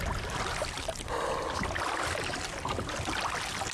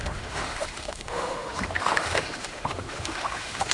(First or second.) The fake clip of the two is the second